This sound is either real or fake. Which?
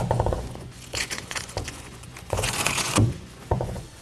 fake